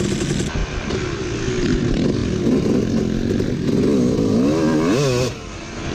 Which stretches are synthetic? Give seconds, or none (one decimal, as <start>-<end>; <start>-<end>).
0.6-1.2